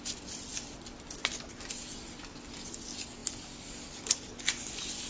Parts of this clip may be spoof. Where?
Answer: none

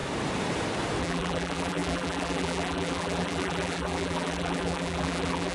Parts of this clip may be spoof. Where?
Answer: 1.0-5.5 (vocoder, BigVGAN v2)

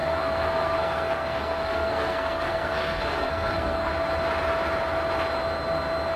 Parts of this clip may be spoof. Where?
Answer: 0.0-3.9 (codec, SNAC)